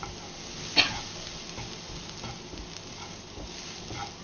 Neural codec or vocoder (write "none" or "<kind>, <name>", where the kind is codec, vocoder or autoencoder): none